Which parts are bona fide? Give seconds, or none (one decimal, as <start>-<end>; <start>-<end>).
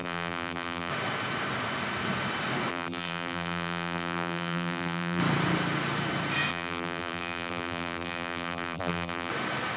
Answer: 0.9-2.7; 5.2-6.5; 9.3-9.8